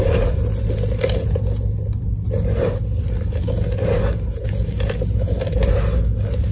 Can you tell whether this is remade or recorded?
recorded